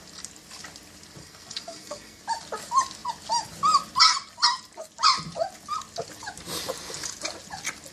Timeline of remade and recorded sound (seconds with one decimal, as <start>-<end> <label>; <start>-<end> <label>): 0.0-1.2 recorded; 1.2-2.2 remade; 2.2-7.9 recorded